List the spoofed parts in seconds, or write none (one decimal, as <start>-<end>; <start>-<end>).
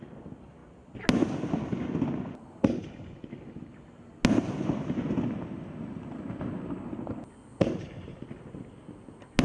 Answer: none